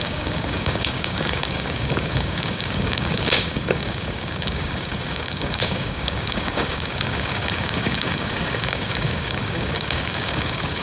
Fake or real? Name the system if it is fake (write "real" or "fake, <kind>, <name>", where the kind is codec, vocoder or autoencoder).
fake, codec, DAC